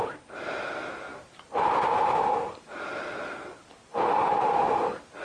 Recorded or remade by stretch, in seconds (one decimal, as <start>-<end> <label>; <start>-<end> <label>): 0.0-1.1 recorded; 1.1-4.2 remade; 4.2-5.2 recorded